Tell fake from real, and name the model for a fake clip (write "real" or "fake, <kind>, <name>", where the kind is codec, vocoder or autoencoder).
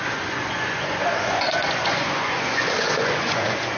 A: fake, vocoder, Vocos